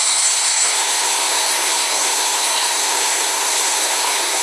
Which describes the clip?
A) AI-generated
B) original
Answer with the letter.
A